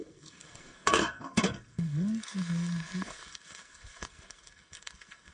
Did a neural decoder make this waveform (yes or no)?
yes